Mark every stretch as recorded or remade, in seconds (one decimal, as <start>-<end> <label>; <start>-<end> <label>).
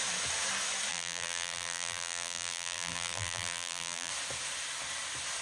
0.0-0.9 recorded; 0.9-4.1 remade; 4.1-5.4 recorded